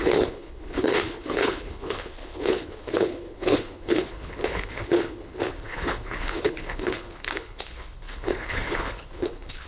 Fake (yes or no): yes